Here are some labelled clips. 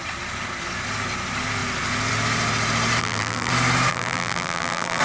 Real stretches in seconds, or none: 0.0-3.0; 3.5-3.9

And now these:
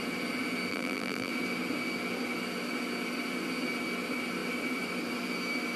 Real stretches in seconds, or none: 0.0-0.7; 1.3-5.8

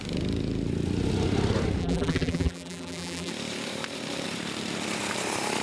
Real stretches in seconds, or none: 0.0-1.8; 3.3-5.6

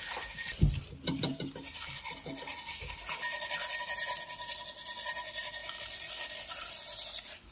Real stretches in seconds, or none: 0.0-5.6; 6.7-7.5

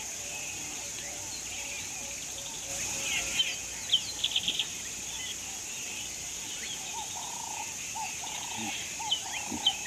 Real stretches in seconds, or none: 2.7-3.4